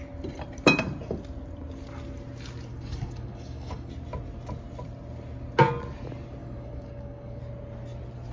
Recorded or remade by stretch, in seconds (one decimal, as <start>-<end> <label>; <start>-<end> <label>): 0.0-2.7 recorded; 2.7-3.9 remade; 3.9-6.4 recorded; 6.4-7.4 remade; 7.4-8.3 recorded